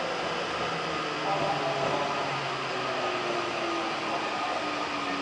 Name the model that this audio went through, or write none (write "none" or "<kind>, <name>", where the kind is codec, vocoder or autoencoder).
none